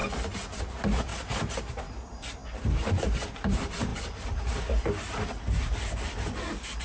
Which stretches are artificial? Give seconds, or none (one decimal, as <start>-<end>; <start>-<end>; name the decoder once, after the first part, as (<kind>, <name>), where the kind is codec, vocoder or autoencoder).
0.6-1.1 (vocoder, BigVGAN v2); 1.6-3.9